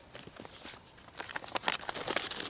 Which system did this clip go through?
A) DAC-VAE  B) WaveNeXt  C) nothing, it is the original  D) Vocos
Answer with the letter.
C